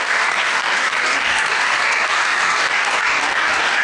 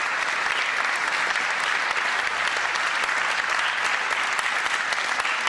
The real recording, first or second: second